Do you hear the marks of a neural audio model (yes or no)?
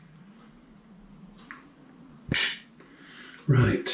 no